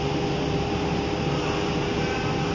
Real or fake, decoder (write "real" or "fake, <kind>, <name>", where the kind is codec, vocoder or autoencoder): real